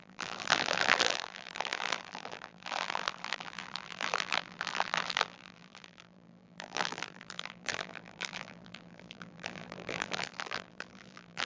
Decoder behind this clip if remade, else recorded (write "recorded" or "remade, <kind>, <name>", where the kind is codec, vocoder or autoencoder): remade, vocoder, BigVGAN v2